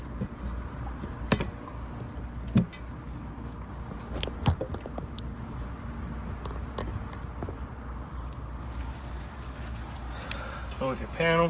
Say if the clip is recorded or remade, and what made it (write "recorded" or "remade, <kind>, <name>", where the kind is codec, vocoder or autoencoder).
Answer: recorded